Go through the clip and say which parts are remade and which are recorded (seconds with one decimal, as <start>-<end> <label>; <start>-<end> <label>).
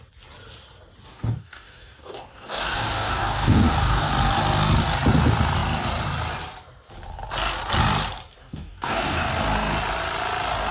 0.0-1.1 recorded; 1.1-4.1 remade; 4.1-8.4 recorded; 8.4-9.3 remade; 9.3-10.7 recorded